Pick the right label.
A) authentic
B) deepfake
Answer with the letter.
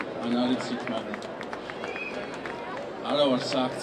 A